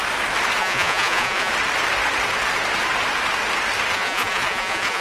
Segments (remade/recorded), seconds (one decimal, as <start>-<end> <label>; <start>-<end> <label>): 0.0-0.6 recorded; 0.6-1.5 remade; 1.5-3.9 recorded; 3.9-5.0 remade